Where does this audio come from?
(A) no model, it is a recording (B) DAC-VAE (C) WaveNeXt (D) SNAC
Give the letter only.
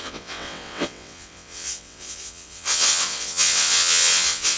C